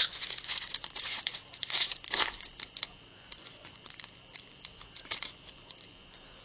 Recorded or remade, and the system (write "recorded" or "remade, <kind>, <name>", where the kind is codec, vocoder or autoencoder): remade, vocoder, Vocos